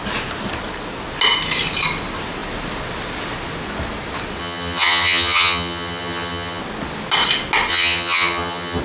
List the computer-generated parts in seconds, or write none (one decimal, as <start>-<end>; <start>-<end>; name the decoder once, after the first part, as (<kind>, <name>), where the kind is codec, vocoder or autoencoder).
4.4-6.6 (vocoder, HiFi-GAN); 7.7-8.8